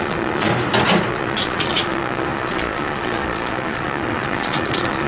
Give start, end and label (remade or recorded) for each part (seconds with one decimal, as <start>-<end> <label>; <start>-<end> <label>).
0.0-0.5 remade; 0.5-1.1 recorded; 1.1-5.1 remade